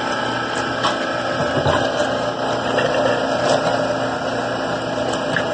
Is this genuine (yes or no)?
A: yes